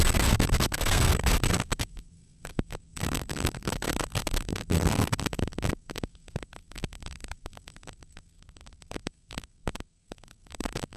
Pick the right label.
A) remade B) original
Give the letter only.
A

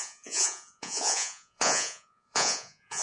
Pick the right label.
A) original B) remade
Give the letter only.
B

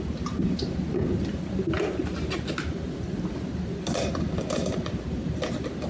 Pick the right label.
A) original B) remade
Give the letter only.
A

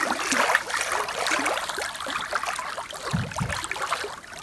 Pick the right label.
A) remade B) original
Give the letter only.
B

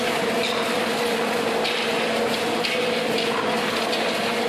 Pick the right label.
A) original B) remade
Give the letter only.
A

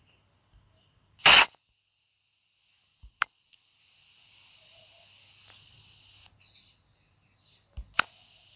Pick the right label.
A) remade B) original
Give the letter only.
B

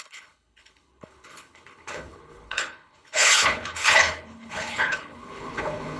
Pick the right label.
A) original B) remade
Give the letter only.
B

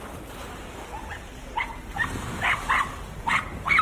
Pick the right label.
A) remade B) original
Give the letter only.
B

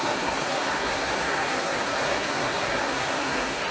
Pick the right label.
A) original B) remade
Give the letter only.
B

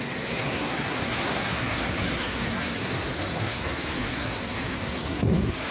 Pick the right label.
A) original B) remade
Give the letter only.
B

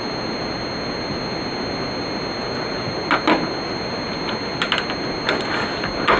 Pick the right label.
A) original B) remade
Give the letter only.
A